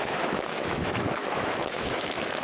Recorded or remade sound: remade